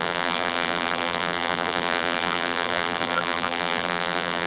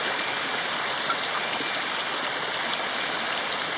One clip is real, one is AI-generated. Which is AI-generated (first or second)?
first